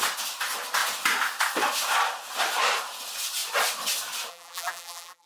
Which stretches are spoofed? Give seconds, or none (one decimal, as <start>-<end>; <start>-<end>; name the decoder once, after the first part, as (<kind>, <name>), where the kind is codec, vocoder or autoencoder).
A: 4.3-5.3 (vocoder, BigVGAN v2)